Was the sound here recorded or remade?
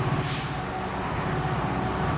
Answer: recorded